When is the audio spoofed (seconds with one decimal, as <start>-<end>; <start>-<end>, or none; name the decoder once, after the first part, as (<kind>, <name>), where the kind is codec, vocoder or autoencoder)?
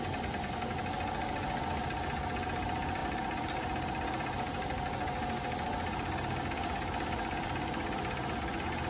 none